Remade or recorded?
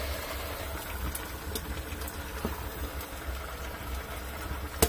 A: recorded